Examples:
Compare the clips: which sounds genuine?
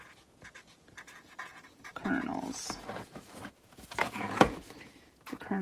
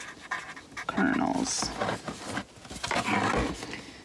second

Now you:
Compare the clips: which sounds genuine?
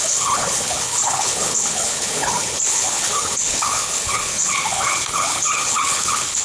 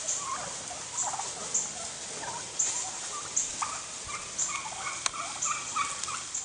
second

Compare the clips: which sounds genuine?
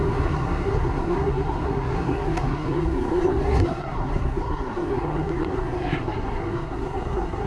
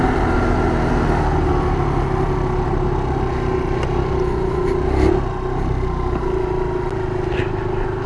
second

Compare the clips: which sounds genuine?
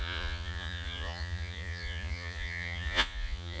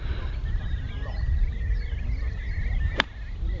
second